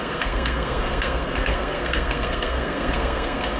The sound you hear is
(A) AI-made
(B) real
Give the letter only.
A